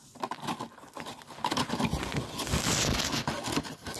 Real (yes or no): yes